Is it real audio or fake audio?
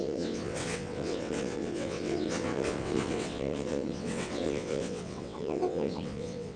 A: fake